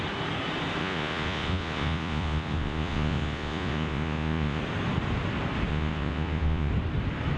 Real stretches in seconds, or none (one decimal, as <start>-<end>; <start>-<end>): 0.0-0.8; 4.6-5.7; 6.7-7.4

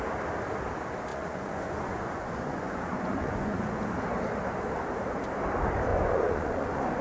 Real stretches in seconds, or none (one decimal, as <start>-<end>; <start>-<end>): 0.0-1.1; 3.8-5.9

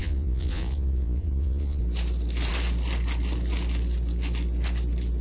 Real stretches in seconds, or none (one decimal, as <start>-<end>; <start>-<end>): 1.8-5.2

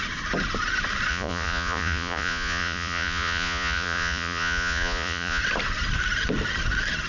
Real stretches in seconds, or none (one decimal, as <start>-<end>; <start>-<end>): 0.0-1.1; 5.4-7.1

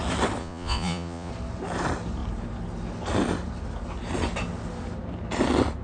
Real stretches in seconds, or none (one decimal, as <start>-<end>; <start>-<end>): 0.0-0.4; 1.3-5.8

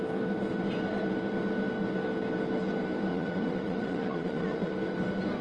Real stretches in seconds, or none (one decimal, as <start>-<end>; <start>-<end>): 0.0-3.1; 4.7-5.4